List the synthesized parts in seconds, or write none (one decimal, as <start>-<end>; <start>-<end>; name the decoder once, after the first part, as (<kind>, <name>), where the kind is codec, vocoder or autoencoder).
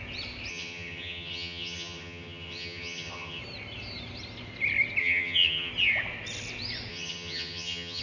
0.5-3.4 (vocoder, HiFi-GAN); 5.0-5.7; 6.9-8.0